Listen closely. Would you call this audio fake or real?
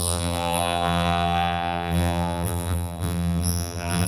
fake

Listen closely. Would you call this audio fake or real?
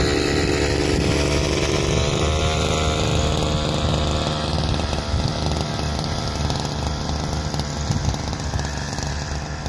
real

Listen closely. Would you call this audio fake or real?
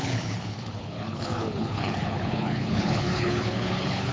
fake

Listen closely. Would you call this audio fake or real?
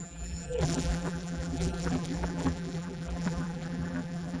fake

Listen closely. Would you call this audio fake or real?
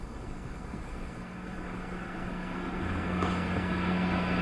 fake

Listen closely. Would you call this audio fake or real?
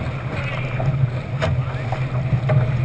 real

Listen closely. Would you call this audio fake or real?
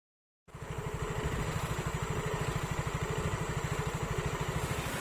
real